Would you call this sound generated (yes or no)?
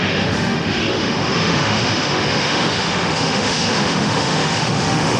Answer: yes